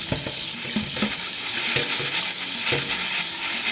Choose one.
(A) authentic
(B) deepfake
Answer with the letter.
A